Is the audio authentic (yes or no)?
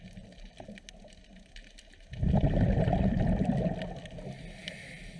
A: yes